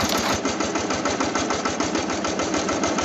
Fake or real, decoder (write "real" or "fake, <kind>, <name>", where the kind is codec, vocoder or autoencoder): fake, vocoder, BigVGAN v2